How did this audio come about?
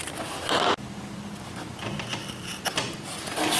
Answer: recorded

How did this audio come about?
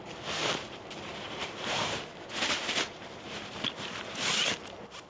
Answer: remade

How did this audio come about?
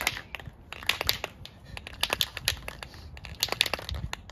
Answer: recorded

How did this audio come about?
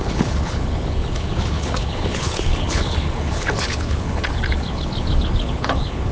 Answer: remade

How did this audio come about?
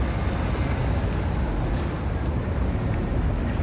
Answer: recorded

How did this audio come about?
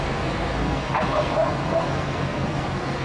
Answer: remade